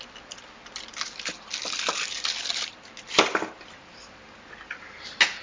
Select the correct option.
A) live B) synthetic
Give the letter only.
A